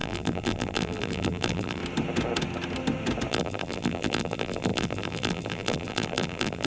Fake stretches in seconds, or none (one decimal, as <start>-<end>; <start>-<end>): 0.0-1.8; 3.3-6.7